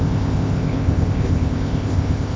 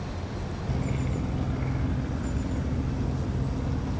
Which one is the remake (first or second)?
first